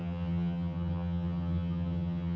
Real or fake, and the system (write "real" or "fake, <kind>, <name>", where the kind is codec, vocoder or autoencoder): fake, vocoder, HiFi-GAN